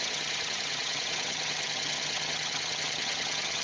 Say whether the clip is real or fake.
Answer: fake